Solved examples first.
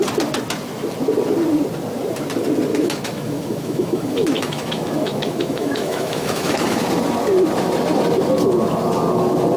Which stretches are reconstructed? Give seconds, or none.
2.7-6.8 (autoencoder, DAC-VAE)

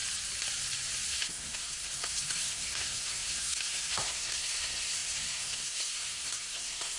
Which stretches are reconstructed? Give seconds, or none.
1.1-7.0 (codec, SNAC)

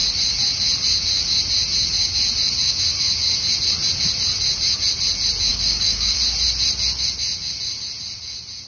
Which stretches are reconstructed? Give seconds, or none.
5.5-6.2 (codec, DAC)

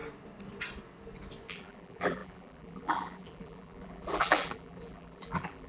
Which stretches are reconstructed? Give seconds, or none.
1.5-5.7 (vocoder, BigVGAN v2)

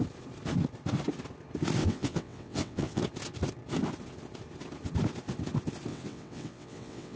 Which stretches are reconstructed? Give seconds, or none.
1.8-3.0 (vocoder, WaveNeXt); 5.9-7.2

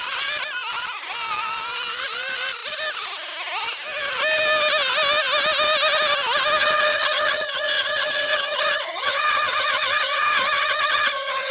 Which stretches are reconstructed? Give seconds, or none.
6.6-11.5 (vocoder, HiFi-GAN)